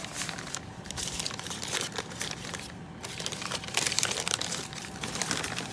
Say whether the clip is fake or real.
fake